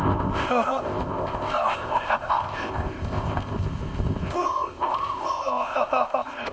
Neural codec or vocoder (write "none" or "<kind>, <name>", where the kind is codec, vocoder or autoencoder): codec, ZipCodec